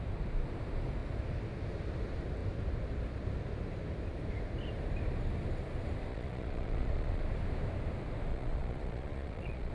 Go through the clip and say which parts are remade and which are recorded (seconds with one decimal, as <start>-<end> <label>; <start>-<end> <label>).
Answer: 0.0-6.1 recorded; 6.1-7.2 remade; 7.2-8.3 recorded; 8.3-9.7 remade

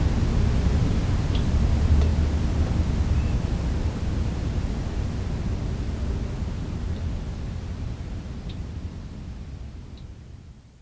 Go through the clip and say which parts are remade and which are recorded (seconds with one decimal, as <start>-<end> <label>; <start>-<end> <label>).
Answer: 0.0-10.8 recorded

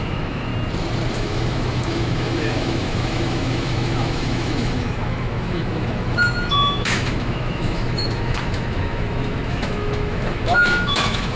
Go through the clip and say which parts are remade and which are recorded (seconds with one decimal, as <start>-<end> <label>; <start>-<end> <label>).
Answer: 0.0-0.5 remade; 0.5-1.1 recorded; 1.1-11.4 remade